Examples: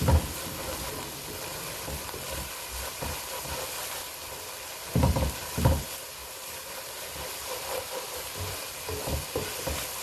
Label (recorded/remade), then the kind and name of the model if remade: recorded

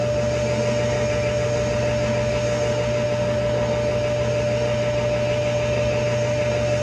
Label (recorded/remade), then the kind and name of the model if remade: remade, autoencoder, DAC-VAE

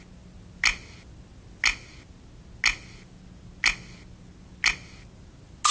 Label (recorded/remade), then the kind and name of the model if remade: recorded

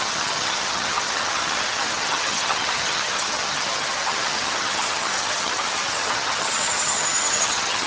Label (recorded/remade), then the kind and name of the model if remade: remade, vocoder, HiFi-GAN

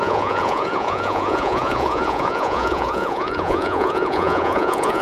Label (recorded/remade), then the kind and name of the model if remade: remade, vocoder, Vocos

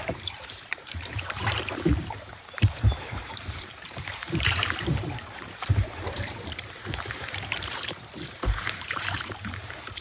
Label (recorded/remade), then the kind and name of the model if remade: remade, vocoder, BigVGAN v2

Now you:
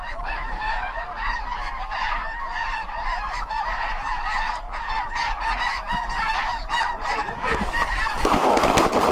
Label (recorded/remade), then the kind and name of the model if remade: remade, codec, DAC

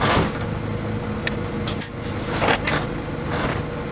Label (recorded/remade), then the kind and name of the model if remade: recorded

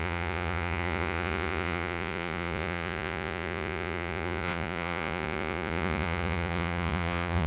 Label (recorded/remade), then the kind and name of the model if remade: remade, vocoder, Vocos